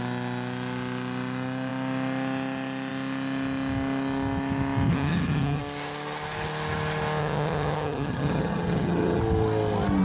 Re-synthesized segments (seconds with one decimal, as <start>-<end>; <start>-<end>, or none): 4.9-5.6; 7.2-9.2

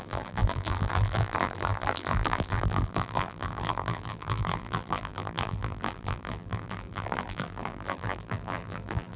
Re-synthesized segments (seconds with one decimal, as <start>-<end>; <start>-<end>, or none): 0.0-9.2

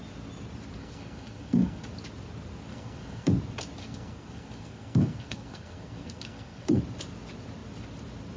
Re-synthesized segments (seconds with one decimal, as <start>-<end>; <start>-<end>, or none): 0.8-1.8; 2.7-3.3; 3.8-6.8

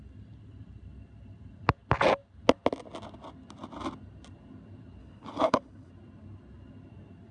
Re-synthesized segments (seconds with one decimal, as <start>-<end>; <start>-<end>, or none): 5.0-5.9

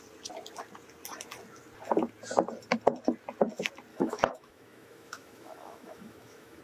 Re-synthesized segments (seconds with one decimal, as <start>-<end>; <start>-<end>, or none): 3.9-6.6

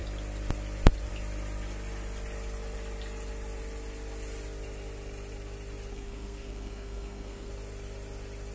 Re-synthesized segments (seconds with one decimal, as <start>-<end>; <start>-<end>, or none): 5.9-7.5

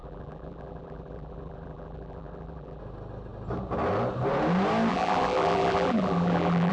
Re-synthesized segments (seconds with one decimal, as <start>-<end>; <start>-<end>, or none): 0.0-2.8; 4.9-6.7